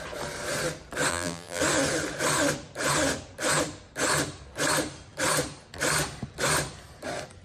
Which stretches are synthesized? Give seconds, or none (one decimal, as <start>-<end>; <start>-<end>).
1.1-1.6